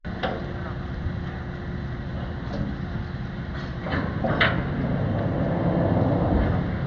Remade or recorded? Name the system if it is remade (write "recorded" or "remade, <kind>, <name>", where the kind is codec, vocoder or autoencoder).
recorded